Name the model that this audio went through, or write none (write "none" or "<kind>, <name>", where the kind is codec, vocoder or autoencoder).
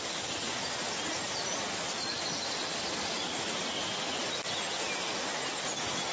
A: none